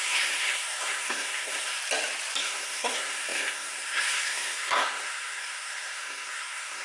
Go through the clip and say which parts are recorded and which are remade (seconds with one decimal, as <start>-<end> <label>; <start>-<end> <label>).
0.0-1.8 remade; 1.8-2.4 recorded; 2.4-6.8 remade